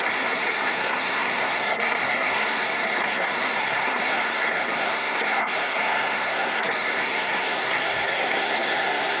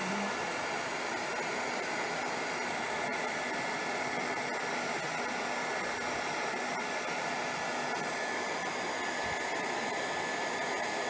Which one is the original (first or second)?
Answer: second